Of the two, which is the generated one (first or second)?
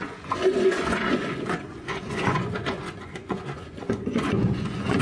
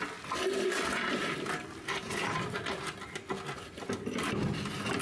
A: first